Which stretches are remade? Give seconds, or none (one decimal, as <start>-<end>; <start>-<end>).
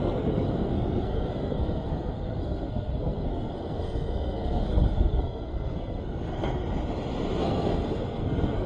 0.0-6.6; 7.4-8.7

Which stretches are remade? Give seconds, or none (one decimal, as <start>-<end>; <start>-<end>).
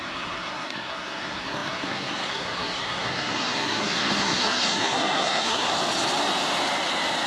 0.0-5.7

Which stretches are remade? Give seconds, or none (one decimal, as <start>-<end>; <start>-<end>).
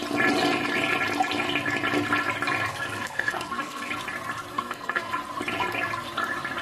2.7-3.9; 4.5-5.1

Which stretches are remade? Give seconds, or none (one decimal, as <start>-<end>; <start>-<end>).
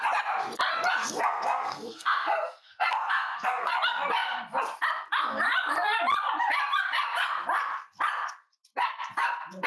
1.0-3.7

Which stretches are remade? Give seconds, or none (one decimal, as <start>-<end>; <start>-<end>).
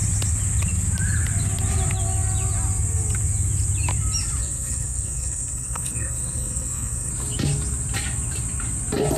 4.4-7.1